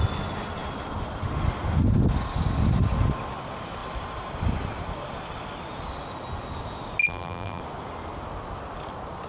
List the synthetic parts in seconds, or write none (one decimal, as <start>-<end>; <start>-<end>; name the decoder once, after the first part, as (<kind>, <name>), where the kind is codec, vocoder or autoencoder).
7.0-7.6 (vocoder, BigVGAN v2)